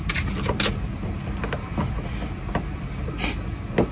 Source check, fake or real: real